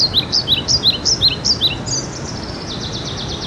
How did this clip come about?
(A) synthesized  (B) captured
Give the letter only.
B